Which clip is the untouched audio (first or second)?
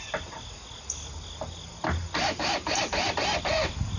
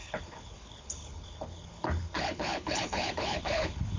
first